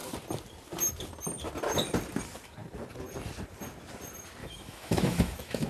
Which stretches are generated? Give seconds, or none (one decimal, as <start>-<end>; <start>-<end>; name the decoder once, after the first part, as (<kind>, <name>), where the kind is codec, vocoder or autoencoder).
4.4-5.7 (autoencoder, DAC-VAE)